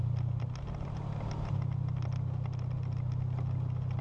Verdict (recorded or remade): recorded